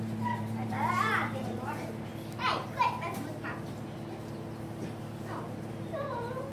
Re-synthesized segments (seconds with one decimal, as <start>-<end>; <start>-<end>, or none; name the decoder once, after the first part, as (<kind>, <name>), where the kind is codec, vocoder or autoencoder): 0.0-2.1 (vocoder, BigVGAN v2); 5.4-6.5